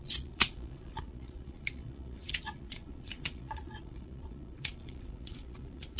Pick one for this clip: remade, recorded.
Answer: remade